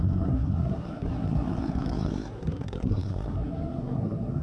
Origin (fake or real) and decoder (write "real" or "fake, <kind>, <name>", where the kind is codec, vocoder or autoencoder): fake, codec, SNAC